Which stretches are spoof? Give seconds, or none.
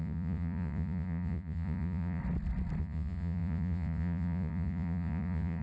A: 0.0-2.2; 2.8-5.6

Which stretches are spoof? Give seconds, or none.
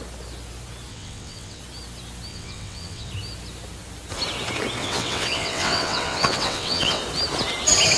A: 0.9-1.6; 2.3-3.1; 4.8-7.0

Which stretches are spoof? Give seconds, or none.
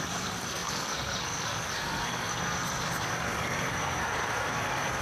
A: 0.0-5.0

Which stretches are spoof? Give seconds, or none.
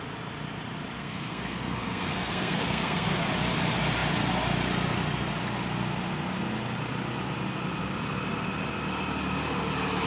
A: 1.0-3.2